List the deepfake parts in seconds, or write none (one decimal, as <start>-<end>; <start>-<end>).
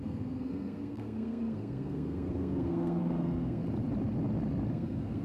0.0-3.6; 4.7-5.2